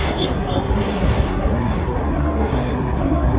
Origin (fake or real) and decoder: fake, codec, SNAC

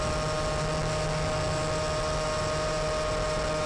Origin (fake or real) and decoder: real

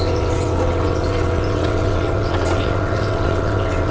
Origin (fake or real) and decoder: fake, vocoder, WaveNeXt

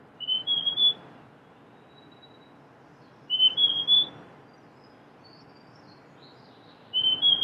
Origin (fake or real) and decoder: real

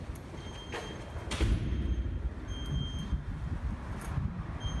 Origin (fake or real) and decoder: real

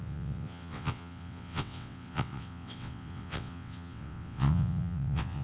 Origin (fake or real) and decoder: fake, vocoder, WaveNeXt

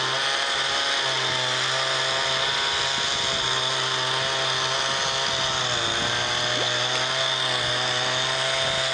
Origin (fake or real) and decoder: real